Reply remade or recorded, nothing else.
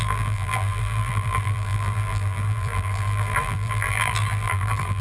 remade